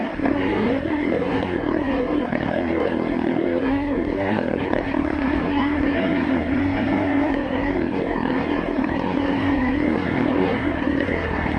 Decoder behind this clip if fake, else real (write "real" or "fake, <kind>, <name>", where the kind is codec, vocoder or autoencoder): fake, codec, SNAC